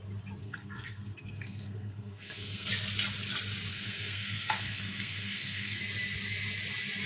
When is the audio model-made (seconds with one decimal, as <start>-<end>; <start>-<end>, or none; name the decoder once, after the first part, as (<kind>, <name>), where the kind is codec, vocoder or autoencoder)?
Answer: 0.4-2.7 (codec, SNAC); 3.7-5.8